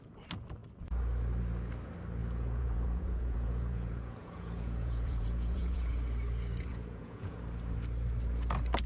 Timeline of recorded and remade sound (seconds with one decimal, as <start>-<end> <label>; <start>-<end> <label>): 0.0-2.2 recorded; 2.2-5.9 remade; 5.9-6.7 recorded; 6.7-7.4 remade; 7.4-8.9 recorded